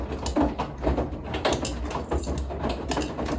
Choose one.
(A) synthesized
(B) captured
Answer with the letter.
B